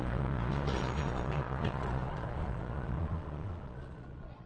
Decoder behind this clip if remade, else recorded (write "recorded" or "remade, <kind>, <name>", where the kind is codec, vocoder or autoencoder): remade, vocoder, Vocos